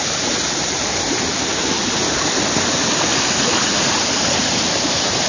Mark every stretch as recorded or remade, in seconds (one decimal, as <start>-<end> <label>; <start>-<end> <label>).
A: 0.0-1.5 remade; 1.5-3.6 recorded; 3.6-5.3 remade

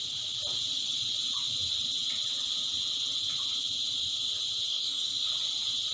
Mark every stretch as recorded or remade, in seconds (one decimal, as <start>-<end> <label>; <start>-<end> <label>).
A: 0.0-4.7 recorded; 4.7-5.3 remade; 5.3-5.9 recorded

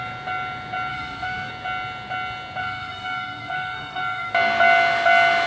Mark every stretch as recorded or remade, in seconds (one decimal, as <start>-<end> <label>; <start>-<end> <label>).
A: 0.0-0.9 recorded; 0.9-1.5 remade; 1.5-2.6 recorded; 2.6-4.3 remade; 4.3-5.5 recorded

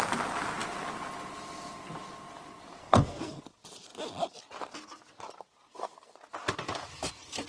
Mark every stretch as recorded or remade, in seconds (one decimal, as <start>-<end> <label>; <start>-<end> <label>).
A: 0.0-2.8 recorded; 2.8-3.4 remade; 3.4-5.7 recorded; 5.7-6.2 remade; 6.2-7.5 recorded

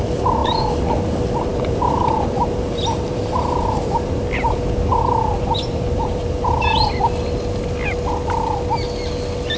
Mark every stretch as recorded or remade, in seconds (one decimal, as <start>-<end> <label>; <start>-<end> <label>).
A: 0.0-1.5 recorded; 1.5-4.2 remade; 4.2-4.9 recorded; 4.9-6.9 remade; 6.9-9.6 recorded

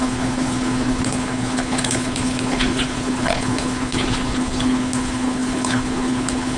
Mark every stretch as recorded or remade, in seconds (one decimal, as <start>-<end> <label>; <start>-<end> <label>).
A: 0.0-6.6 remade

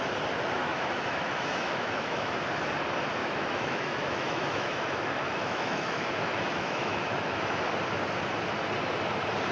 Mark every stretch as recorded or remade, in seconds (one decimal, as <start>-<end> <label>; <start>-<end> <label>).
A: 0.0-0.6 recorded; 0.6-2.4 remade; 2.4-3.2 recorded; 3.2-7.6 remade; 7.6-9.5 recorded

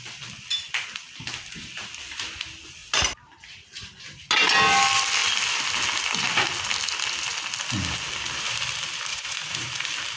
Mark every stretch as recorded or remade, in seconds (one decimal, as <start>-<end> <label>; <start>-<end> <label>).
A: 0.0-9.1 recorded; 9.1-9.7 remade; 9.7-10.2 recorded